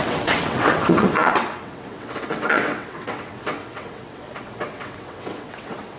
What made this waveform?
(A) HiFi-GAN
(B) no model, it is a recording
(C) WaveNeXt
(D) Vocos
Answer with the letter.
C